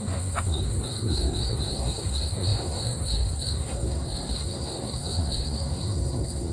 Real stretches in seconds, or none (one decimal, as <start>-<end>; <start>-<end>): none